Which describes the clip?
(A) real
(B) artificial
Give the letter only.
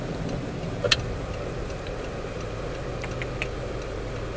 A